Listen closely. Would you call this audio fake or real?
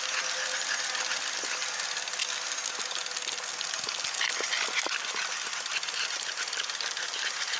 real